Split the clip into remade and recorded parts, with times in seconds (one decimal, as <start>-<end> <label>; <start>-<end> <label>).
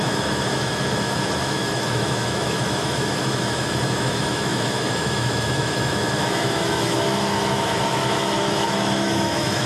0.0-9.7 remade